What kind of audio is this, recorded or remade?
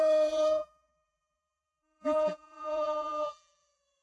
remade